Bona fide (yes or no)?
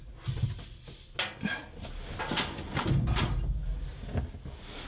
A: yes